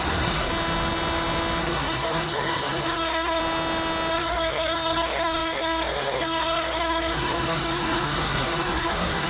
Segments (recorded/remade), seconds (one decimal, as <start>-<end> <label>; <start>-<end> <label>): 0.0-0.5 remade; 0.5-1.6 recorded; 1.6-3.4 remade; 3.4-4.1 recorded; 4.1-9.3 remade